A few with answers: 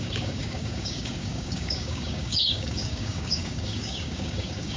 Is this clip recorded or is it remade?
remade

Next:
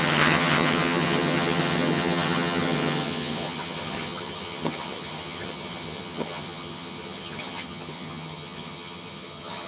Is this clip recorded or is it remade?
remade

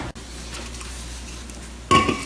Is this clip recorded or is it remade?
recorded